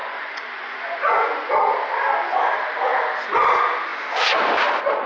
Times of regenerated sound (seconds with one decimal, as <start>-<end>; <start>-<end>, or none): 0.0-1.5